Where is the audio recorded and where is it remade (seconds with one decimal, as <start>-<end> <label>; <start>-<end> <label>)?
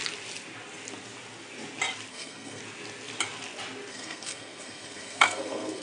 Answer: 0.0-2.1 recorded; 2.1-2.6 remade; 2.6-3.9 recorded; 3.9-5.8 remade